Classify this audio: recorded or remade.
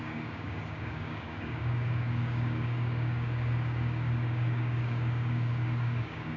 remade